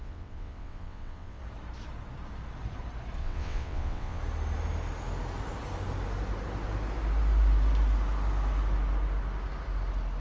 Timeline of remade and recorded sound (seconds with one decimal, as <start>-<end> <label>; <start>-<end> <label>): 0.0-1.4 remade; 1.4-3.2 recorded; 3.2-4.2 remade; 4.2-10.2 recorded